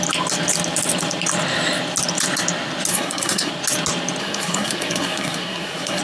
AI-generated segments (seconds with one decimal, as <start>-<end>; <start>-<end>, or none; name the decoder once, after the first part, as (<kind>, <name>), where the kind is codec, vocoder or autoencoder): 2.9-3.5 (codec, SNAC); 4.2-6.0